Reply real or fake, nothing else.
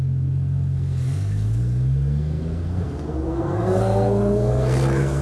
fake